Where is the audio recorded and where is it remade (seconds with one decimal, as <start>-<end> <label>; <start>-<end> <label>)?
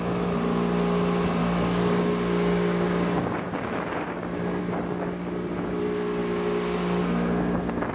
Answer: 0.0-1.4 recorded; 1.4-4.6 remade; 4.6-7.9 recorded